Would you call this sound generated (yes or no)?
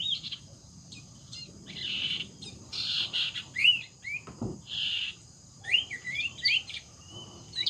yes